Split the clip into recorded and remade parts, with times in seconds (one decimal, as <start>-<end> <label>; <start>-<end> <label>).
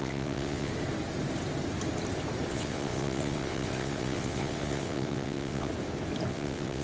0.0-0.7 remade; 0.7-2.5 recorded; 2.5-5.7 remade; 5.7-6.3 recorded; 6.3-6.8 remade